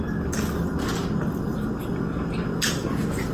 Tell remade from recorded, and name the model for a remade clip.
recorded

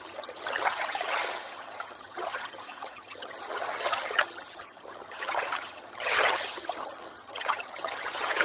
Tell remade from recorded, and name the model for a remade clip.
remade, vocoder, HiFi-GAN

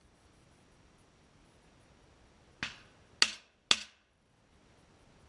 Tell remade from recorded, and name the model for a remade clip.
recorded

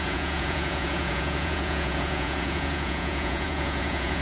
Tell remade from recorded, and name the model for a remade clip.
remade, vocoder, Vocos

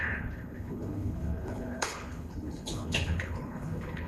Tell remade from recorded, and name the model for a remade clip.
remade, codec, HILCodec